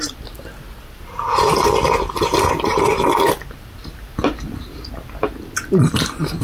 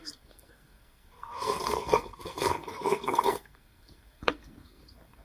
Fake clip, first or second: second